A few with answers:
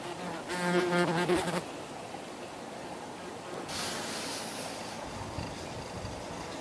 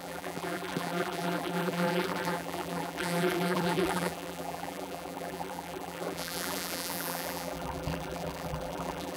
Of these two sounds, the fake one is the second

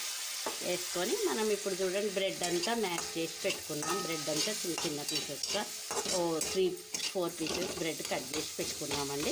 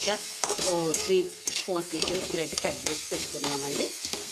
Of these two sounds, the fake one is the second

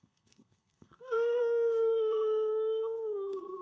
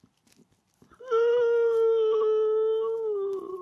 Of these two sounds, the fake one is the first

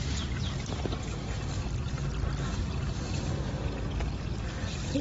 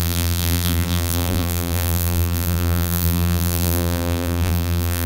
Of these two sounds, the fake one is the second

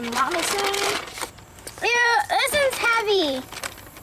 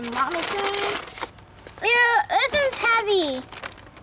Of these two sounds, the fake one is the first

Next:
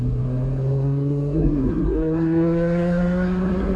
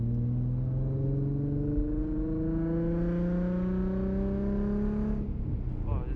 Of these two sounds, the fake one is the first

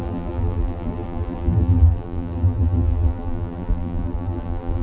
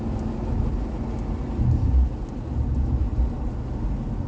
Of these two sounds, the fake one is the first